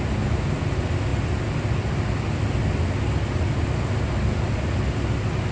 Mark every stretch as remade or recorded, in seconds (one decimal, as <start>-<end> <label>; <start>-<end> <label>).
0.0-5.5 recorded